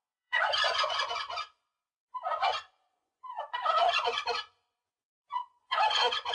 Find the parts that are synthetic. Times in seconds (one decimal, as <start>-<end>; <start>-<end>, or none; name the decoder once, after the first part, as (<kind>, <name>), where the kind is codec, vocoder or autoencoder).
0.0-6.3 (vocoder, Vocos)